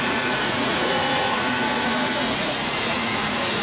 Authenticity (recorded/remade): remade